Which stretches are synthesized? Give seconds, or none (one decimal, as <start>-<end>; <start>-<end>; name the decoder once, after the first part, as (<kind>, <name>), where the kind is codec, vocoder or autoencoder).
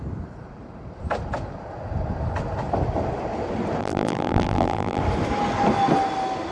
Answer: 3.8-5.0 (vocoder, BigVGAN v2)